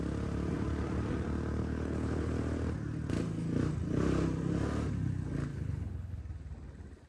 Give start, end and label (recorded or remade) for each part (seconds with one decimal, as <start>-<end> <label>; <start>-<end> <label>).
0.0-1.6 recorded; 1.6-2.3 remade; 2.3-5.5 recorded; 5.5-6.2 remade; 6.2-7.1 recorded